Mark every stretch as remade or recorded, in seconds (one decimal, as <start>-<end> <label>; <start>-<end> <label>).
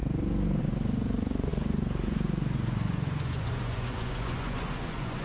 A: 0.0-0.6 recorded; 0.6-5.2 remade